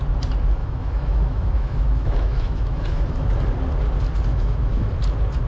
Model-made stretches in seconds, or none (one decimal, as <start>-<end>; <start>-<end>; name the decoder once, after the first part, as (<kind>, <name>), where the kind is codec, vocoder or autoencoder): 0.6-3.3 (autoencoder, DAC-VAE); 4.3-4.9